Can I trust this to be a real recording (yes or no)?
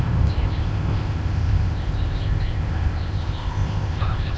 no